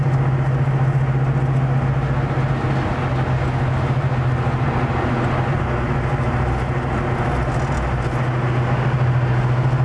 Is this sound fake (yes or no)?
no